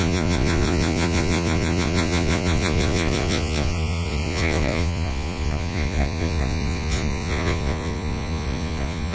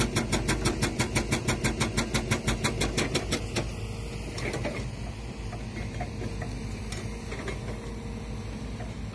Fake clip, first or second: first